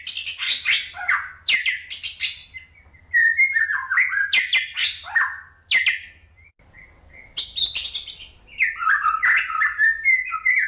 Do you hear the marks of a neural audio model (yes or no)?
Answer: no